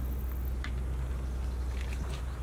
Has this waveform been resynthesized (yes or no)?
no